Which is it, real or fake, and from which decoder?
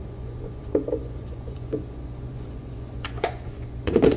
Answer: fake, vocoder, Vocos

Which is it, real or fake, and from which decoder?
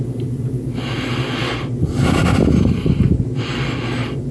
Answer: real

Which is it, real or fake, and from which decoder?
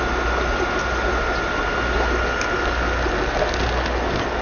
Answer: real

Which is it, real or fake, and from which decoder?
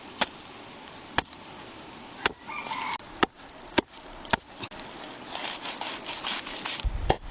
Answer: real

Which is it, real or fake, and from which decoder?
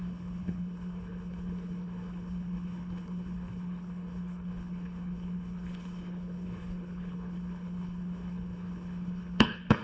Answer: fake, codec, HILCodec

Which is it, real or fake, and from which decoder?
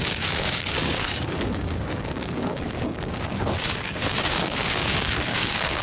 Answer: fake, codec, DAC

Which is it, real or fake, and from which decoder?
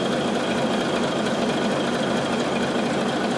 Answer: real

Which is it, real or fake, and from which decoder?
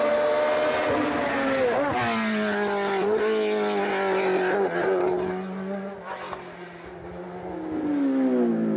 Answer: real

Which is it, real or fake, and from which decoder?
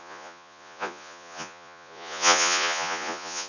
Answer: fake, vocoder, Vocos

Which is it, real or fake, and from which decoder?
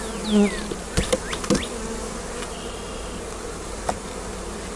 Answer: real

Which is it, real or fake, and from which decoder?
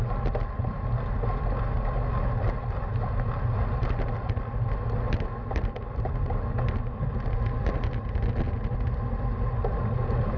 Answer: real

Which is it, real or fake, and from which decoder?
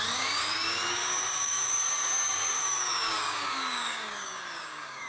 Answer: fake, codec, DAC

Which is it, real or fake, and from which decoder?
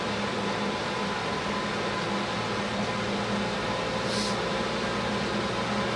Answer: real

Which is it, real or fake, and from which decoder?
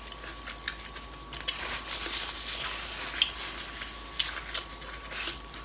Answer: real